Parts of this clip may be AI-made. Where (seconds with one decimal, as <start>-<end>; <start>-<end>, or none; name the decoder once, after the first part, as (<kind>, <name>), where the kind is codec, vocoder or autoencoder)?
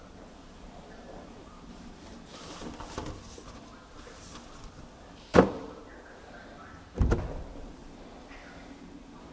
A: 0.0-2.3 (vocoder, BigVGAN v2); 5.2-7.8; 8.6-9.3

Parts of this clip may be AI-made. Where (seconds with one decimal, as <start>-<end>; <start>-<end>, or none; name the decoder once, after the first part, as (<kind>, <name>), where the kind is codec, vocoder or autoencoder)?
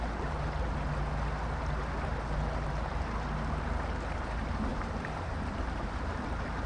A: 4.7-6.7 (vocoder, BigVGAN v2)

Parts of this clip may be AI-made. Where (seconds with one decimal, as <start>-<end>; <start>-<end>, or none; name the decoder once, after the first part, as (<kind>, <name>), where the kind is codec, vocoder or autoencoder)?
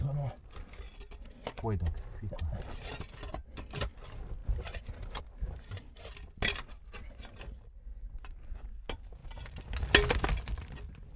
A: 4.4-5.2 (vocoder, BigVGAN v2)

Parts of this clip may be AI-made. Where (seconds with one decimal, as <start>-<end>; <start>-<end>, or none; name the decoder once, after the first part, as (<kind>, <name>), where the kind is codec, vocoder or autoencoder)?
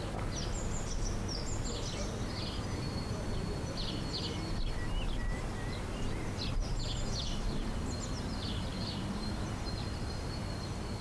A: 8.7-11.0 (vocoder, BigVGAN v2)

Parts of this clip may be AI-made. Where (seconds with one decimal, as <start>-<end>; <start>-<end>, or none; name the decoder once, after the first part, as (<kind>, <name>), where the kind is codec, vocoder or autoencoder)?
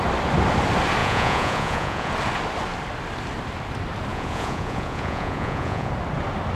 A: 1.0-2.1 (vocoder, Vocos); 4.1-5.9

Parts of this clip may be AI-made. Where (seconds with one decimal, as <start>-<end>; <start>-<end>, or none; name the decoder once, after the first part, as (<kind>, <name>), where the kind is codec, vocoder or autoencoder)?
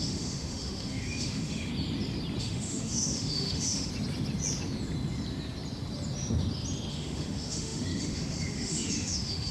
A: 0.0-1.7 (autoencoder, DAC-VAE); 2.4-3.9; 6.9-9.5